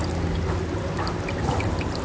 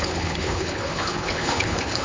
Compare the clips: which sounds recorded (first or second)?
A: first